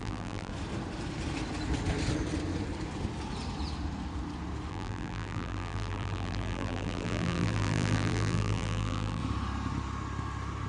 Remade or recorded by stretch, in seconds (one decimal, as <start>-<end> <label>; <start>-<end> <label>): 0.0-0.5 remade; 0.5-4.7 recorded; 4.7-9.2 remade; 9.2-10.7 recorded